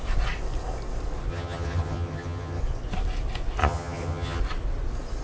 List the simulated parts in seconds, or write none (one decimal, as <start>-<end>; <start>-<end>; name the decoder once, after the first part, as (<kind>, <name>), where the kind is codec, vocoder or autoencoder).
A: 1.3-2.6 (vocoder, HiFi-GAN); 3.6-4.4